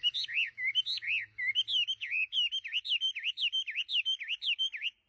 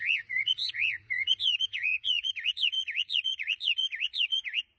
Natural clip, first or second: first